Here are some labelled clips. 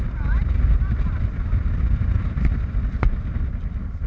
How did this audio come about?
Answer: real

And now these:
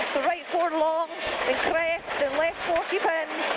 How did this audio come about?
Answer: real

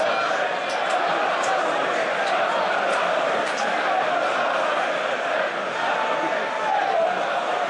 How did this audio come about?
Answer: real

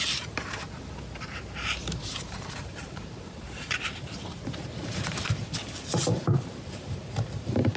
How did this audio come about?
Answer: fake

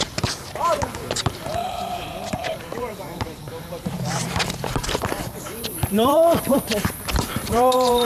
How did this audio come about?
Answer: fake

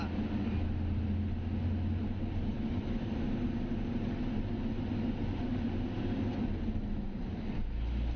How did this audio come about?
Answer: real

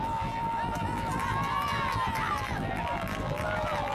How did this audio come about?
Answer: fake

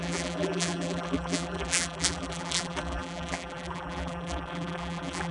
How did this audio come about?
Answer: fake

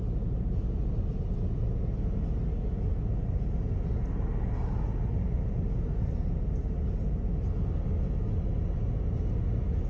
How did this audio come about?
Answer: real